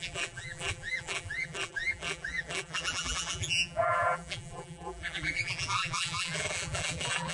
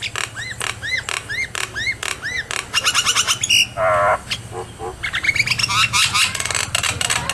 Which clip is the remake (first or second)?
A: first